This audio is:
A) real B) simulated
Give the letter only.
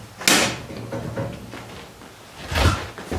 A